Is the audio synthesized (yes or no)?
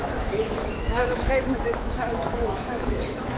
yes